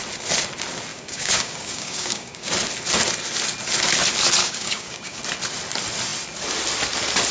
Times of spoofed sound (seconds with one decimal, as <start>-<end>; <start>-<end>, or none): 0.9-2.5; 4.4-5.2